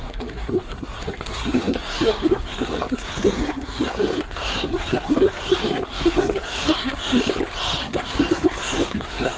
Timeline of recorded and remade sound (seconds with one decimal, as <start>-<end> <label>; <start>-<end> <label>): 0.0-7.2 remade; 7.2-7.8 recorded; 7.8-9.4 remade